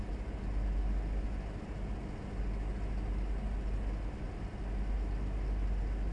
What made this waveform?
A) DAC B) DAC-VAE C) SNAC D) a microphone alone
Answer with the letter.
D